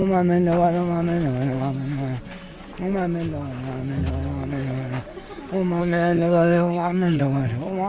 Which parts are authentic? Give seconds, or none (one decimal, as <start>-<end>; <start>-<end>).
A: 0.0-5.8; 7.2-7.9